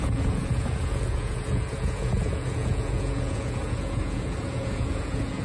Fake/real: fake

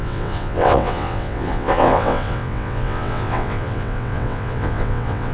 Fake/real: fake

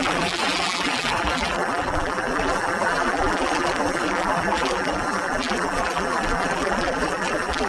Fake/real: fake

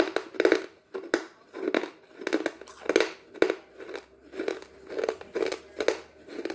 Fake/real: real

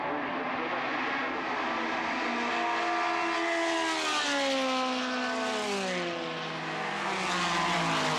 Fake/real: real